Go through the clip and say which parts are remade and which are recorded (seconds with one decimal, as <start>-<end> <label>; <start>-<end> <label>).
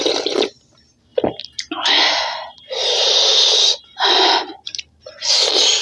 0.0-5.8 recorded